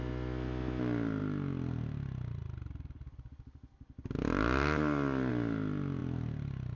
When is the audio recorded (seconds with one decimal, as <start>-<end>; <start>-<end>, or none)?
0.0-6.8